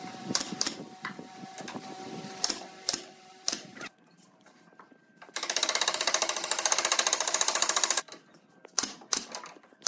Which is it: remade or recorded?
remade